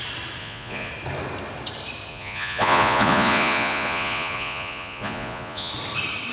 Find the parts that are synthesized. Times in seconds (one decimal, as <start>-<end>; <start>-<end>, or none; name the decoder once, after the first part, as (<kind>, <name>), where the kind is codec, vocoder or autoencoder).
0.4-0.9 (vocoder, Vocos); 2.1-5.7